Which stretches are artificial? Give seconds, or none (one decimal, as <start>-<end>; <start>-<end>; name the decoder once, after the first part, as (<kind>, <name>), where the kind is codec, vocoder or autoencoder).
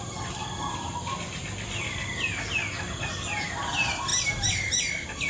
4.1-4.7 (vocoder, BigVGAN v2)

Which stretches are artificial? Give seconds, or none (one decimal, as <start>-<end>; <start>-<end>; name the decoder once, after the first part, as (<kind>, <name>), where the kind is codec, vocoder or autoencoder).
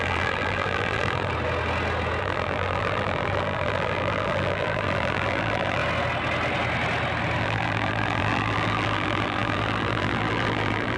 0.0-1.3 (vocoder, BigVGAN v2); 2.2-5.8; 7.4-11.0